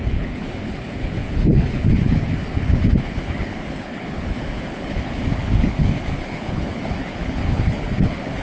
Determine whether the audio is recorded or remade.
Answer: remade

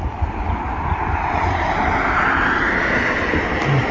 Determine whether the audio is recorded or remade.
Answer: recorded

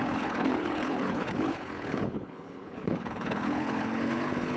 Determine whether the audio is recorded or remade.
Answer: remade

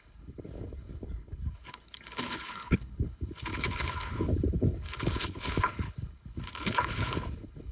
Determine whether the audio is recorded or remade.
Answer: remade